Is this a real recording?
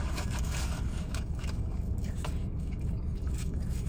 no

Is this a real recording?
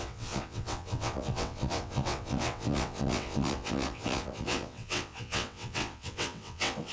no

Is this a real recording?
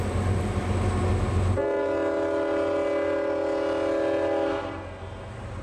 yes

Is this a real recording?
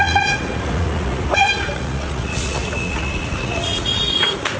no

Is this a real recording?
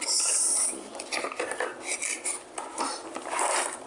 yes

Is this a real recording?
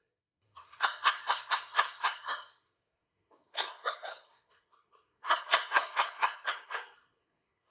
no